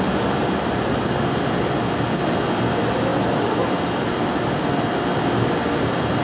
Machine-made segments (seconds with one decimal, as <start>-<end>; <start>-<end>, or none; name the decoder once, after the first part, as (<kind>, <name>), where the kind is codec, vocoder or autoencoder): 0.4-1.2 (vocoder, BigVGAN v2); 3.1-4.2